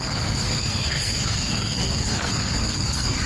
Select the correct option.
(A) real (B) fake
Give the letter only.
B